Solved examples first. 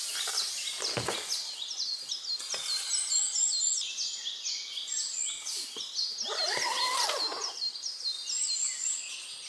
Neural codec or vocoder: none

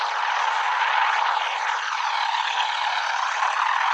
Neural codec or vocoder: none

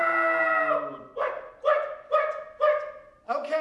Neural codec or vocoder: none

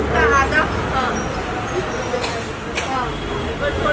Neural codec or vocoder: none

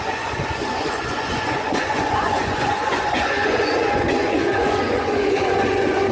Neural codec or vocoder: vocoder, Vocos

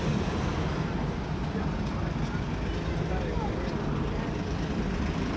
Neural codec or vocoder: none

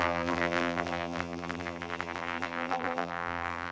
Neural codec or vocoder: vocoder, BigVGAN v2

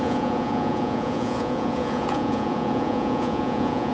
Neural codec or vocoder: vocoder, Vocos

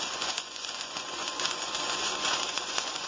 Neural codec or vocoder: vocoder, Vocos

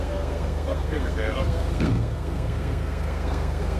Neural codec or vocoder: codec, SNAC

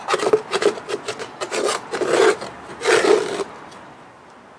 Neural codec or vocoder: none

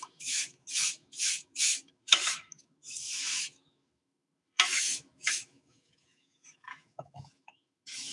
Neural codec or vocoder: autoencoder, DAC-VAE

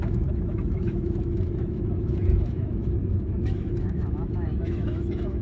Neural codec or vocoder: autoencoder, DAC-VAE